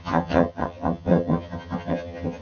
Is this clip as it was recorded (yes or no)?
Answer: no